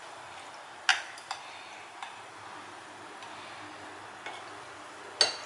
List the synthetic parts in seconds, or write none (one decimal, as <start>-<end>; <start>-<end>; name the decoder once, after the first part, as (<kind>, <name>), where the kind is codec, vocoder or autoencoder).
none